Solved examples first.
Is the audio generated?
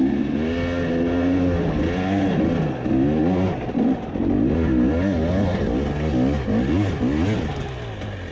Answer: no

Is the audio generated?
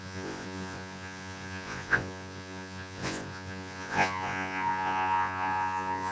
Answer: yes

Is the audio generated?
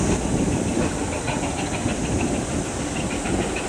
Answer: no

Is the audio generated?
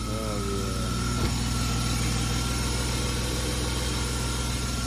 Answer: no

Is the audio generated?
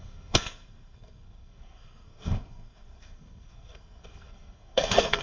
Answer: yes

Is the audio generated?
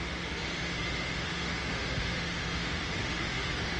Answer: yes